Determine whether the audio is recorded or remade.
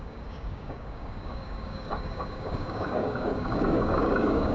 remade